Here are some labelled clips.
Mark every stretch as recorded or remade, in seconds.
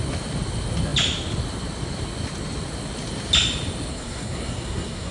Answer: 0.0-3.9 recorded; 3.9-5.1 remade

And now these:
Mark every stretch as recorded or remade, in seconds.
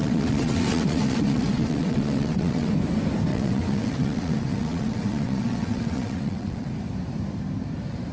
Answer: 0.0-2.7 remade; 2.7-3.3 recorded; 3.3-6.7 remade; 6.7-8.1 recorded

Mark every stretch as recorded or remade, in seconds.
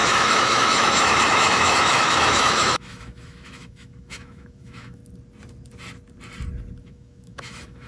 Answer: 0.0-5.0 remade; 5.0-6.8 recorded; 6.8-7.9 remade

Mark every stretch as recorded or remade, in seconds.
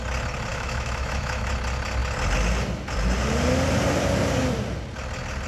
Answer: 0.0-0.5 recorded; 0.5-1.5 remade; 1.5-5.5 recorded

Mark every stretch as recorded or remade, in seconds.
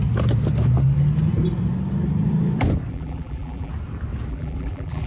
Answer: 0.0-2.9 recorded; 2.9-3.7 remade; 3.7-4.3 recorded; 4.3-5.1 remade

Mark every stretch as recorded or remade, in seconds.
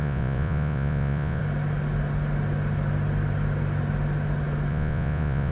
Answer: 0.0-1.4 remade; 1.4-4.7 recorded; 4.7-5.5 remade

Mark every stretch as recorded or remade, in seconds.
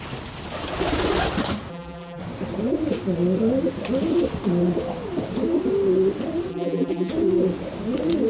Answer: 0.0-1.7 recorded; 1.7-2.2 remade; 2.2-6.5 recorded; 6.5-7.1 remade; 7.1-8.3 recorded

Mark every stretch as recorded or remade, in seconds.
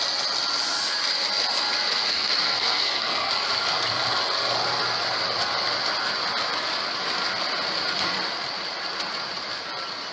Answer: 0.0-2.1 recorded; 2.1-3.3 remade; 3.3-10.1 recorded